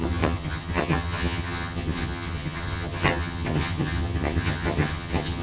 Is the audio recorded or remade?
remade